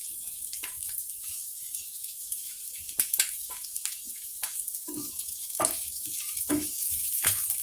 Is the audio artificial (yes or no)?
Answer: yes